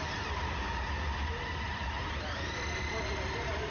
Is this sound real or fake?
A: real